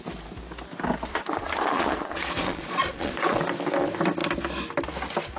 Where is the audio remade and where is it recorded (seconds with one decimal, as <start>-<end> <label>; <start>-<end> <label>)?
0.0-1.1 recorded; 1.1-3.4 remade; 3.4-5.4 recorded